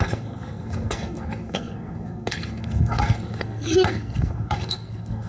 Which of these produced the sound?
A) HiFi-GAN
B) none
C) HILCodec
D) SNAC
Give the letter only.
D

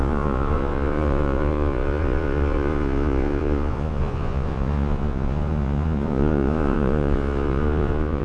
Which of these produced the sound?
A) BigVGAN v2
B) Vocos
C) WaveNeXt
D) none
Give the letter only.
B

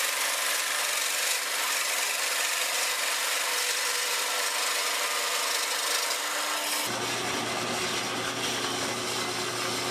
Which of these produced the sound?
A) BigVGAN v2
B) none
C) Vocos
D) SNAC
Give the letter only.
B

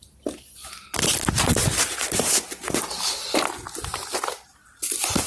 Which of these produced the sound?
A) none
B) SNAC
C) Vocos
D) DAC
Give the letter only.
A